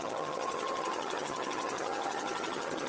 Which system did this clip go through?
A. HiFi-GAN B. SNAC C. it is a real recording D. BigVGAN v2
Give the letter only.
A